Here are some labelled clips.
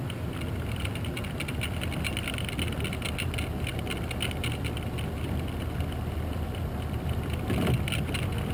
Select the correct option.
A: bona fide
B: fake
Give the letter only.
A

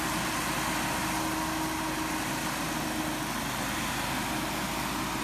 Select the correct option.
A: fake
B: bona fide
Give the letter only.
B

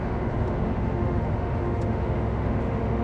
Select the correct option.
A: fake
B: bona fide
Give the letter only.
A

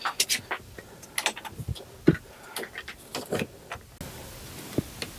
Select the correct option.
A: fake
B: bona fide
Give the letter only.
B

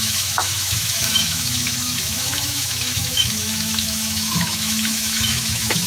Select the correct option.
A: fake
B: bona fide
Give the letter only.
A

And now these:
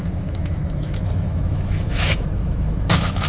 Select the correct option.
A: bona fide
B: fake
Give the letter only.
B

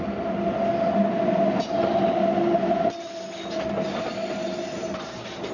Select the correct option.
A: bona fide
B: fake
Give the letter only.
A